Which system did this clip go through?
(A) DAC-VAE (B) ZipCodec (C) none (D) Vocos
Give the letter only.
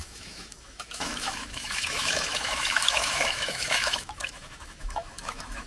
A